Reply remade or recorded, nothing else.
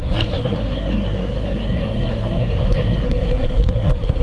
remade